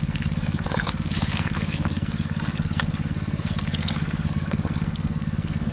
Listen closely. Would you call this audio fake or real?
fake